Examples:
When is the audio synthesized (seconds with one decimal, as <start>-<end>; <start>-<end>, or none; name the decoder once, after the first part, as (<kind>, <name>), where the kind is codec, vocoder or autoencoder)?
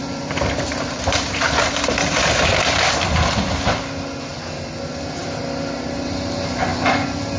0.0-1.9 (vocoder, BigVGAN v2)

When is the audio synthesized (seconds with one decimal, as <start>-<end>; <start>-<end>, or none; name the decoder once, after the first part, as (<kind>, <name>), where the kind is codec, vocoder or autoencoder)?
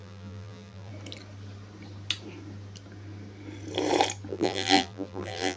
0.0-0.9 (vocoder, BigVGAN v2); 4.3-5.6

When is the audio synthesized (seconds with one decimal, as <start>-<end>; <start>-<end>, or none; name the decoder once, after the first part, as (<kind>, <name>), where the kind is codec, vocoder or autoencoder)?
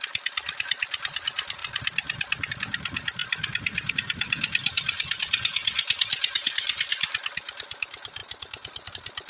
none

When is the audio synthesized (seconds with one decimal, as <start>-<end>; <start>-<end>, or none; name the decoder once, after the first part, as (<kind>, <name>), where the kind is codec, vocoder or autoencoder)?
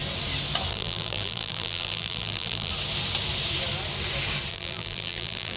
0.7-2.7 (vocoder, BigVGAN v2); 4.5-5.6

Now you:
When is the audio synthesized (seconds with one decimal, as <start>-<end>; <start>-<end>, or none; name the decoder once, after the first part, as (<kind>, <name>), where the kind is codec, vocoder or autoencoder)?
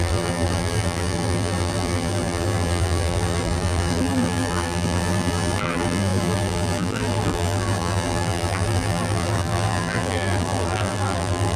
0.0-11.6 (vocoder, BigVGAN v2)